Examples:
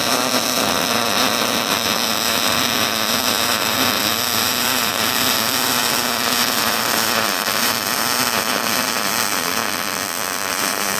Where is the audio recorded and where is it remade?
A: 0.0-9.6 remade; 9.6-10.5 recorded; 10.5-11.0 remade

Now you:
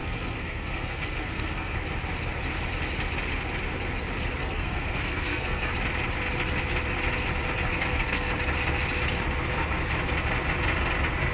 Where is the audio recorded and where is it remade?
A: 0.0-1.8 remade; 1.8-4.4 recorded; 4.4-5.7 remade; 5.7-7.7 recorded; 7.7-8.3 remade; 8.3-11.3 recorded

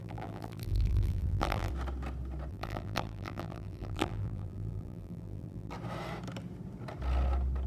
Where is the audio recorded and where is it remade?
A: 0.0-1.7 remade; 1.7-2.5 recorded; 2.5-5.7 remade; 5.7-7.7 recorded

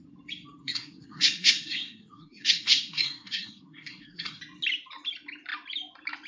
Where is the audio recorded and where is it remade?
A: 0.0-0.6 recorded; 0.6-4.4 remade; 4.4-6.3 recorded

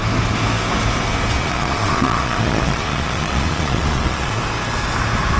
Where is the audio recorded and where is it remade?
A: 0.0-1.4 recorded; 1.4-4.4 remade; 4.4-5.4 recorded

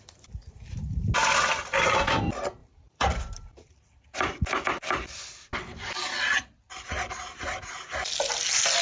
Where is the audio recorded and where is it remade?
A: 0.0-1.2 recorded; 1.2-2.2 remade; 2.2-2.6 recorded; 2.6-4.6 remade; 4.6-8.8 recorded